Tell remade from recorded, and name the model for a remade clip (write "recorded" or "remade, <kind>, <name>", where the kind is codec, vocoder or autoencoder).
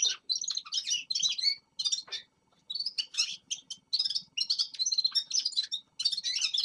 recorded